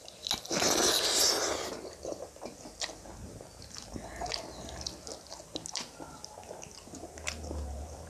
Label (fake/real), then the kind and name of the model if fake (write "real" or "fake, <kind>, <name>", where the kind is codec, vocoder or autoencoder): real